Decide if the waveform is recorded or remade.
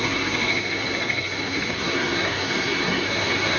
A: remade